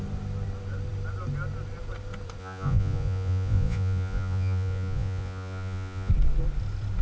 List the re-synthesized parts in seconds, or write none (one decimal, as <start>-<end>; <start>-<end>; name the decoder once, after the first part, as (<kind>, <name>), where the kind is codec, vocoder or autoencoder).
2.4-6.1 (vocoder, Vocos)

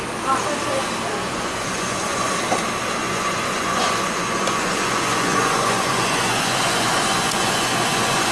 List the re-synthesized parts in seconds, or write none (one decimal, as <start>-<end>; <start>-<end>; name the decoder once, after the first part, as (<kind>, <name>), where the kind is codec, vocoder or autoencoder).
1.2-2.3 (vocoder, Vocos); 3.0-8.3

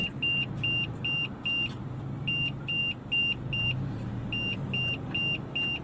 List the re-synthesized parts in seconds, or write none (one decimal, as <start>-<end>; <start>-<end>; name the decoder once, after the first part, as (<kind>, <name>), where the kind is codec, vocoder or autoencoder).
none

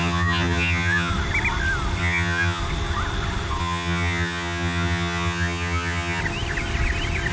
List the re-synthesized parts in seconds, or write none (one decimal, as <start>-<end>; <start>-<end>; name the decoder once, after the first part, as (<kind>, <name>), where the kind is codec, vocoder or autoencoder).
0.0-1.1 (vocoder, HiFi-GAN); 2.0-2.6; 3.6-6.2

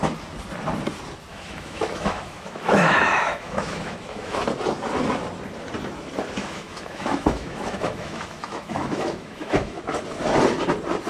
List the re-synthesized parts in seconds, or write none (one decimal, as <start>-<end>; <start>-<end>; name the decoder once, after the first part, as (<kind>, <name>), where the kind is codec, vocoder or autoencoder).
1.3-4.4 (autoencoder, DAC-VAE); 6.4-9.8

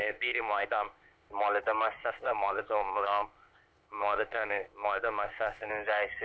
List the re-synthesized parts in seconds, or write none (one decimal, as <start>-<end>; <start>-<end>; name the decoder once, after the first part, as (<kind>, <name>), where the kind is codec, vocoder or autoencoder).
0.0-1.3 (codec, ZipCodec); 2.0-5.7